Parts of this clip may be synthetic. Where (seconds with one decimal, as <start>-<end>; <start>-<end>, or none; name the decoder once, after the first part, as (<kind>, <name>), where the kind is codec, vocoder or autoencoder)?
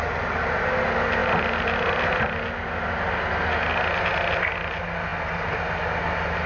none